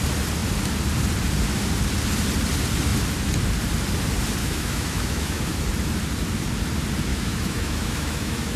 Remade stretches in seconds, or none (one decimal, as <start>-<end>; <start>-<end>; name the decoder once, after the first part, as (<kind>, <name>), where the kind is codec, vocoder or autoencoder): 4.4-5.5 (autoencoder, DAC-VAE); 7.1-8.6